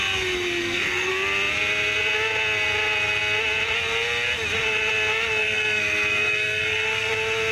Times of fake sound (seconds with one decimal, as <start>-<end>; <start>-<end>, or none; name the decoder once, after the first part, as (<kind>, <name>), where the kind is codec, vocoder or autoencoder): 0.6-1.1 (codec, SNAC); 5.4-7.1